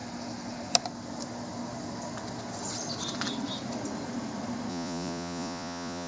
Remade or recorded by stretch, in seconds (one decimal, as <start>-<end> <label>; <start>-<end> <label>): 0.0-4.7 recorded; 4.7-6.1 remade

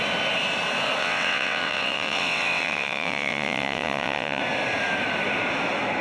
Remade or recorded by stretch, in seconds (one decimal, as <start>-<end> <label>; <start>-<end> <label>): 0.0-1.0 recorded; 1.0-4.4 remade; 4.4-6.0 recorded